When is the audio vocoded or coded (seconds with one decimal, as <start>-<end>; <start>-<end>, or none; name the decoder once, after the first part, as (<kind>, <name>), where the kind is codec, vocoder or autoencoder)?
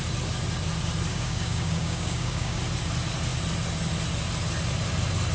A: 1.1-2.6 (codec, DAC)